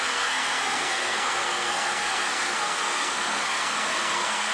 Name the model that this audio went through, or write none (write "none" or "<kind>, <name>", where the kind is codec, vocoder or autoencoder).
codec, SNAC